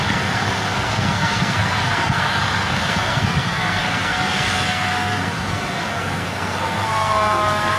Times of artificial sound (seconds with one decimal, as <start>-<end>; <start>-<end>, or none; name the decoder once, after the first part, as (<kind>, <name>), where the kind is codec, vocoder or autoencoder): 0.0-7.8 (codec, SNAC)